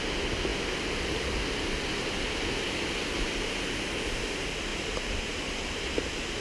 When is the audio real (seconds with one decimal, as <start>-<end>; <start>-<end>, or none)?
0.0-6.4